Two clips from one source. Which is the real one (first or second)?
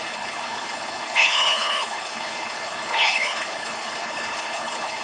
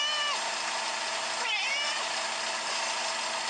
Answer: second